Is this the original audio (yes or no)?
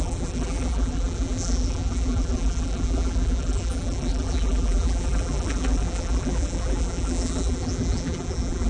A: no